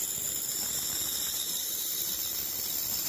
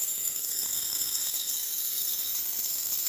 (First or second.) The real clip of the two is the first